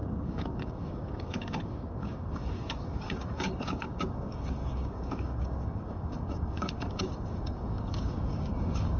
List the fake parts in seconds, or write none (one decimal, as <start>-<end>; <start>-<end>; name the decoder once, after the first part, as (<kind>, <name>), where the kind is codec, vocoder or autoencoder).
0.0-9.0 (codec, DAC)